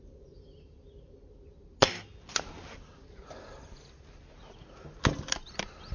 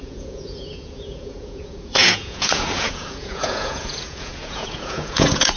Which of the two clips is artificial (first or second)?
second